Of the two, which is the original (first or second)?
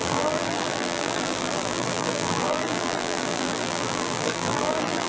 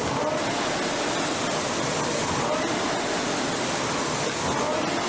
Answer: second